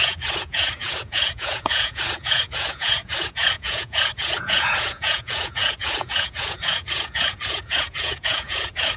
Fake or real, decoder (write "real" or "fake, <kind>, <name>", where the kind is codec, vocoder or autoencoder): fake, vocoder, Vocos